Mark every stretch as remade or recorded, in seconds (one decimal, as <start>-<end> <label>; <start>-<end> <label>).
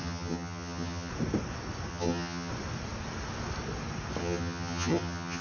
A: 0.0-1.1 remade; 1.1-1.9 recorded; 1.9-2.5 remade; 2.5-4.2 recorded; 4.2-5.4 remade